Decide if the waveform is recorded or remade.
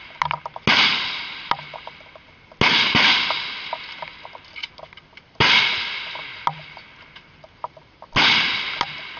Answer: recorded